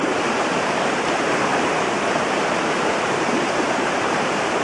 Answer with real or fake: fake